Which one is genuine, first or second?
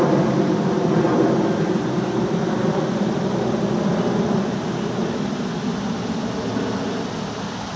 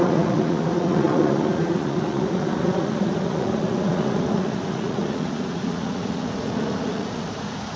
first